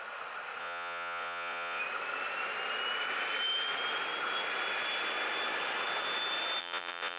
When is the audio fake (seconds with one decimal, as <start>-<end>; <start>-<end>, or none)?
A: 0.6-1.8; 6.6-7.2